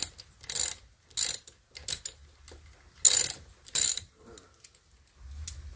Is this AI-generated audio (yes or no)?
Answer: no